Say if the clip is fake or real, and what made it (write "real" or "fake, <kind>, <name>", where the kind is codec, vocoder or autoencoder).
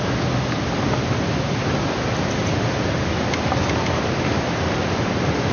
real